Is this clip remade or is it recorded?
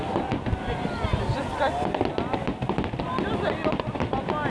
recorded